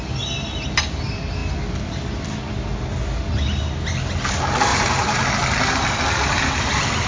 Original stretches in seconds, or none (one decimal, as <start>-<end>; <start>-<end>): 0.0-4.7; 5.3-7.1